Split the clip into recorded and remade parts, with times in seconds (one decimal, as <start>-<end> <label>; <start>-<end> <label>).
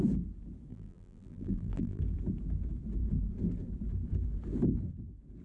0.0-0.7 recorded; 0.7-2.0 remade; 2.0-5.4 recorded